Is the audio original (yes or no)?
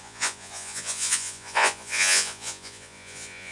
no